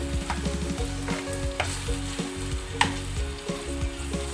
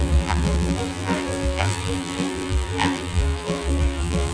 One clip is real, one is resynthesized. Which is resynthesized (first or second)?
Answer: second